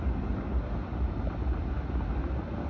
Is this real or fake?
real